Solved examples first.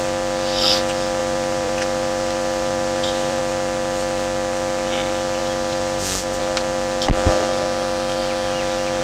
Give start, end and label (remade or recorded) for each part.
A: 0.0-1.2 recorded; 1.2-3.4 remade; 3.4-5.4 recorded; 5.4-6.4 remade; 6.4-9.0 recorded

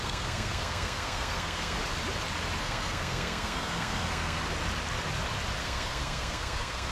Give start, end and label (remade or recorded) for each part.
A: 0.0-1.8 remade; 1.8-2.6 recorded; 2.6-4.4 remade; 4.4-5.6 recorded; 5.6-6.9 remade